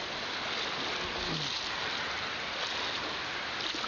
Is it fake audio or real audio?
real